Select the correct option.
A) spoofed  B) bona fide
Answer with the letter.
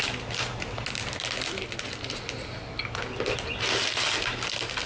B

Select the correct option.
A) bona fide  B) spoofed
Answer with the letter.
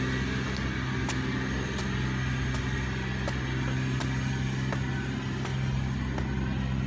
A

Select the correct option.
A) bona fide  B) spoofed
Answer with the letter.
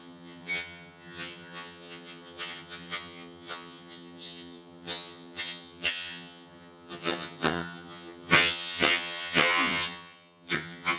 B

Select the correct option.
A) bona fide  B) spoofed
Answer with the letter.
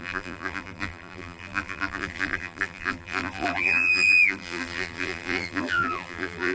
B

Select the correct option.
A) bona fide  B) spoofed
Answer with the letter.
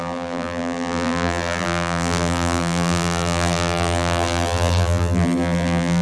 B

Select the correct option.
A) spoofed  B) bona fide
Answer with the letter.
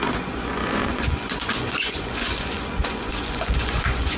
A